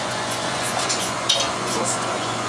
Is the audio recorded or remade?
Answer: remade